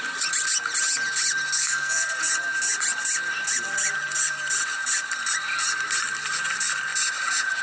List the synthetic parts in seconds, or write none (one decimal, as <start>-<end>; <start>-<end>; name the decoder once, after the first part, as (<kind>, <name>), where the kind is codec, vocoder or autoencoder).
1.6-2.2 (codec, SNAC)